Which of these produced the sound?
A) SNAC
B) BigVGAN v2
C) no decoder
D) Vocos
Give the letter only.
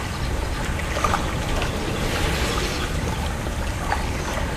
C